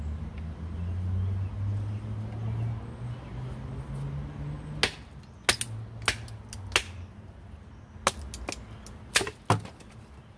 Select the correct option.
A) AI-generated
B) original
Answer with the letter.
B